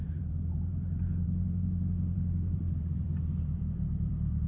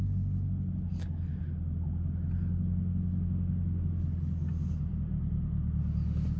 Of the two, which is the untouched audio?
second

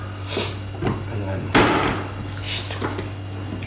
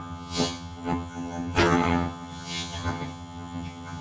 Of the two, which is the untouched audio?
first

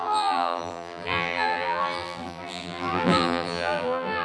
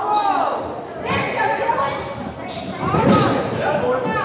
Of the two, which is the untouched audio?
second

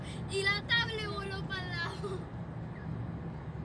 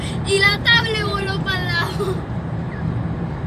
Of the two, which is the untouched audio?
first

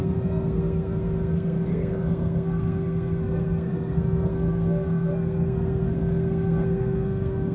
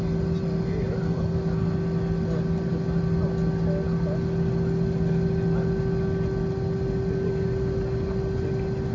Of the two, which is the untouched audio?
second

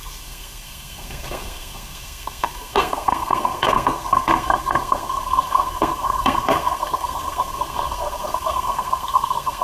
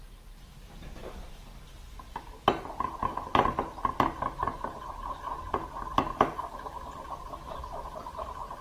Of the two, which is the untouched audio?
second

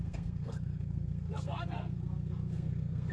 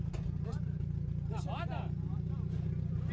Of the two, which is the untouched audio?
second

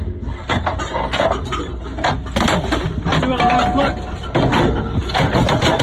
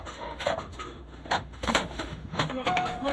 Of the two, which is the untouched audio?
first